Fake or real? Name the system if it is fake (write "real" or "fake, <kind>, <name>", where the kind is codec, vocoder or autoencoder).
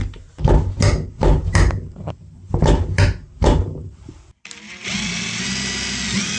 real